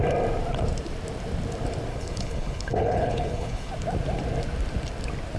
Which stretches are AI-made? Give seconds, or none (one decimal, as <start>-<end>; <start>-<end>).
1.9-3.7